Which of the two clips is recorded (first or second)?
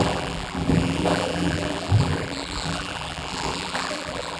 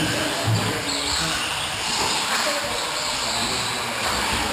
second